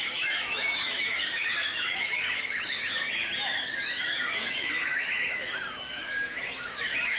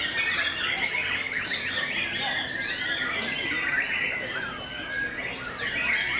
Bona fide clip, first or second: second